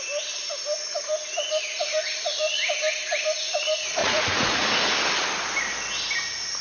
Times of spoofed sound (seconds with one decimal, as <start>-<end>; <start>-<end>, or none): 4.0-4.7